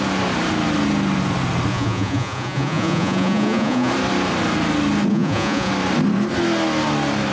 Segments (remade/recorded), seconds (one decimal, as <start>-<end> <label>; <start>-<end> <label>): 0.0-1.7 recorded; 1.7-3.9 remade; 3.9-5.1 recorded; 5.1-5.7 remade; 5.7-7.3 recorded